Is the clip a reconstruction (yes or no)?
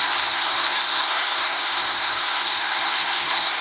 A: yes